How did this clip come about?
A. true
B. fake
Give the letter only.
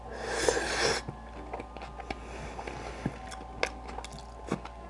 A